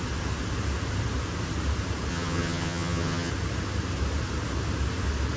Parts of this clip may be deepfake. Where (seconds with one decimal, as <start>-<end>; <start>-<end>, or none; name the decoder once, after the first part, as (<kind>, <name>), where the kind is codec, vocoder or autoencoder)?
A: 2.1-3.3 (vocoder, HiFi-GAN)